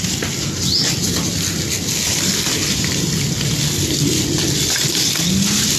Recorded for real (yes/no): yes